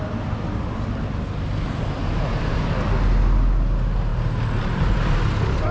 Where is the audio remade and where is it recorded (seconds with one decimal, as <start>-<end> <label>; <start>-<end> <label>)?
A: 0.0-2.0 recorded; 2.0-2.7 remade; 2.7-4.1 recorded; 4.1-5.3 remade; 5.3-5.7 recorded